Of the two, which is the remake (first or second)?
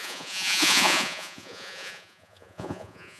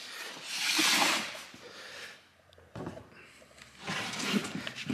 first